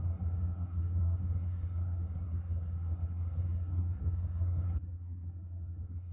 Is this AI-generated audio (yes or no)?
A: yes